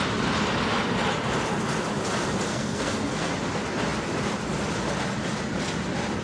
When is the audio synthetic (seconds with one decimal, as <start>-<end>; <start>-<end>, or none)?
2.5-3.3